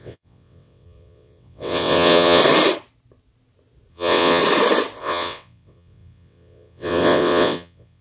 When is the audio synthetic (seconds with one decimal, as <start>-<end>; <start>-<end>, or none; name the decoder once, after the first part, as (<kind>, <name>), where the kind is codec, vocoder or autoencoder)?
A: 0.0-2.4 (vocoder, WaveNeXt); 3.9-4.4; 5.0-8.0